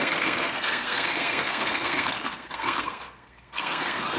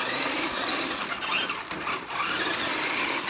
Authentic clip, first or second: second